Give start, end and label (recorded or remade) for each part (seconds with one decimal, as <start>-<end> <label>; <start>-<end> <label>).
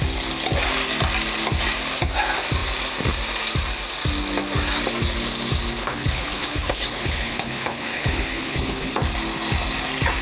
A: 0.0-5.8 recorded; 5.8-8.9 remade; 8.9-10.2 recorded